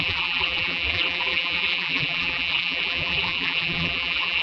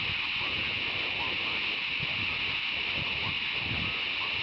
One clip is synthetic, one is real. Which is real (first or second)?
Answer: second